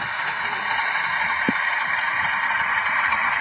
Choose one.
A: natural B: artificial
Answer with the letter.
A